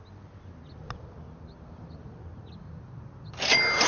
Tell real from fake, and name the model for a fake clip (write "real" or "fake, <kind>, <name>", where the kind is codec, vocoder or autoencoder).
real